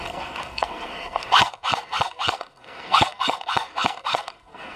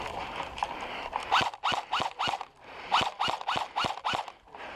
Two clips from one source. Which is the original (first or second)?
second